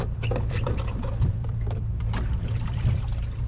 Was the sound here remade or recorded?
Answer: remade